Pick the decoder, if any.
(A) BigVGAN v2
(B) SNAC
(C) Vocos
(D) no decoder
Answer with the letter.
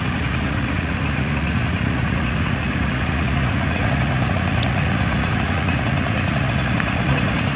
C